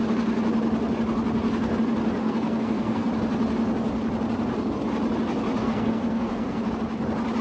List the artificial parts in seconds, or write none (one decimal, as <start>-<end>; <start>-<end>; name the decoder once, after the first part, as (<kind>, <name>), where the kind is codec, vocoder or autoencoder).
2.2-3.1 (codec, SNAC); 5.6-6.7